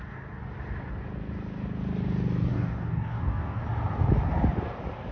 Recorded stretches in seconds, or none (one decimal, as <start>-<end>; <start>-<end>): 0.0-2.5; 3.6-5.1